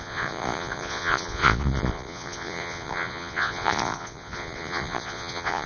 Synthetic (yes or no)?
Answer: yes